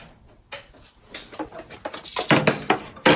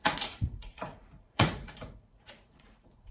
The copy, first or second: second